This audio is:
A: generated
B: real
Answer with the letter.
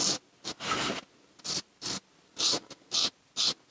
B